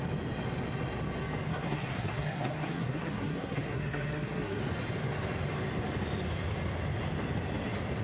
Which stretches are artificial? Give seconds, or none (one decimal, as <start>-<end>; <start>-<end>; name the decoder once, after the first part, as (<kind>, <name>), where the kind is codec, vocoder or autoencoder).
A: 1.5-4.6 (codec, SNAC)